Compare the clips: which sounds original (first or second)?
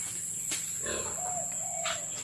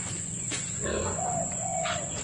first